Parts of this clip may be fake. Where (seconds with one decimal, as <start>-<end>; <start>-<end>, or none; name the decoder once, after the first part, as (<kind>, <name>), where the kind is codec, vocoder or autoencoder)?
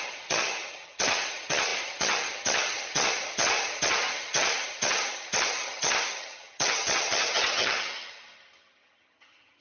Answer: 0.0-9.6 (vocoder, HiFi-GAN)